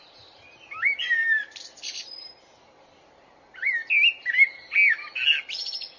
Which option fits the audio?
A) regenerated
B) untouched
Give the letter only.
B